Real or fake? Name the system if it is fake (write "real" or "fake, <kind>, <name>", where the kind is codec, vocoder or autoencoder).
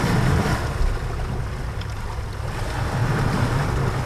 real